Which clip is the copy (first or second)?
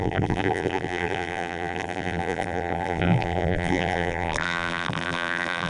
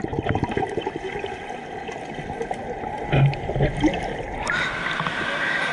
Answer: first